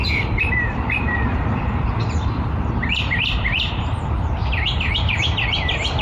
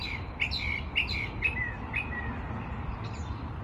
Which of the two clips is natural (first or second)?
second